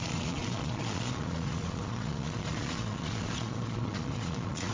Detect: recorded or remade remade